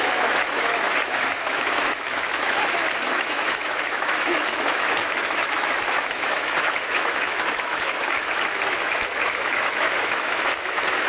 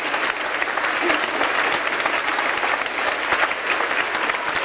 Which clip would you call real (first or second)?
second